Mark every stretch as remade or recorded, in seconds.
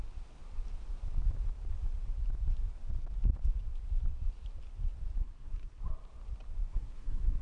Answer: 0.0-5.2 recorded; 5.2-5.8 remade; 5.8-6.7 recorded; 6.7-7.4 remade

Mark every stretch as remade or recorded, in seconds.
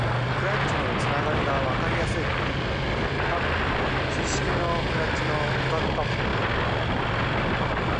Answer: 0.0-8.0 recorded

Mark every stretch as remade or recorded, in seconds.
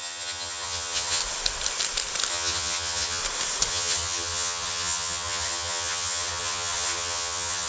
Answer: 0.0-1.2 remade; 1.2-2.3 recorded; 2.3-3.2 remade; 3.2-3.7 recorded; 3.7-7.7 remade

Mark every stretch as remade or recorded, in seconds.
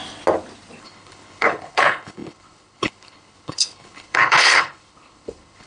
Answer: 0.0-0.8 recorded; 0.8-5.7 remade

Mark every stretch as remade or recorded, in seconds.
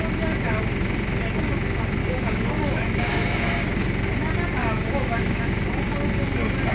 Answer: 0.0-2.0 recorded; 2.0-3.5 remade; 3.5-4.6 recorded; 4.6-5.7 remade; 5.7-6.7 recorded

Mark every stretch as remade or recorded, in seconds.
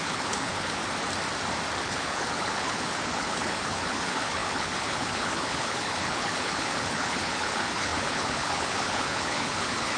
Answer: 0.0-0.8 remade; 0.8-1.8 recorded; 1.8-10.0 remade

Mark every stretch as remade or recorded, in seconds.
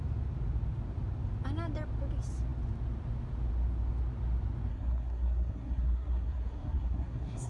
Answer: 0.0-4.7 recorded; 4.7-7.5 remade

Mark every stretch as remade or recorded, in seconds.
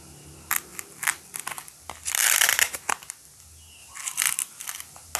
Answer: 0.0-5.2 recorded